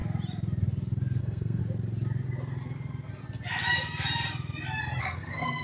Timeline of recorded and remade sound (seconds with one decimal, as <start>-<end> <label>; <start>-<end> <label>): 0.0-1.2 recorded; 1.2-1.6 remade; 1.6-5.0 recorded; 5.0-5.6 remade

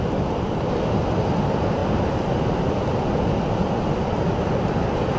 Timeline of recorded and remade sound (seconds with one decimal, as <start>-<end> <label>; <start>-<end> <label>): 0.0-5.2 recorded

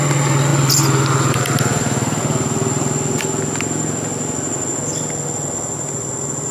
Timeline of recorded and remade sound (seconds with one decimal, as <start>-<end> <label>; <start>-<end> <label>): 0.0-6.5 recorded

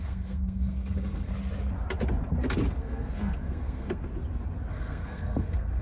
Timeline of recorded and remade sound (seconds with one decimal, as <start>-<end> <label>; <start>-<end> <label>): 0.0-1.3 remade; 1.3-2.7 recorded; 2.7-4.0 remade; 4.0-4.7 recorded; 4.7-5.8 remade

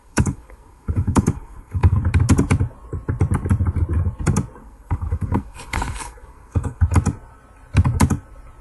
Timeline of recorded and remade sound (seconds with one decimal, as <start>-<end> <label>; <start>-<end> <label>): 0.0-2.0 remade; 2.0-4.6 recorded; 4.6-6.8 remade; 6.8-8.6 recorded

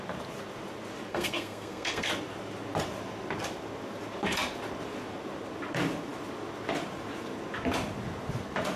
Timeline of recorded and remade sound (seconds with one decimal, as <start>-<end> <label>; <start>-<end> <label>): 0.0-1.1 recorded; 1.1-2.1 remade; 2.1-8.8 recorded

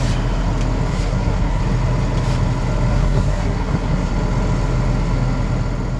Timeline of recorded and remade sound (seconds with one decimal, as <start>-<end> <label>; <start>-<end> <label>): 0.0-0.9 recorded; 0.9-1.6 remade; 1.6-2.9 recorded; 2.9-4.1 remade; 4.1-6.0 recorded